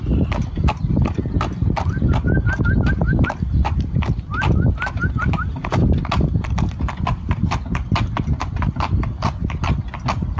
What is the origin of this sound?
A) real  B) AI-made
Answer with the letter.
A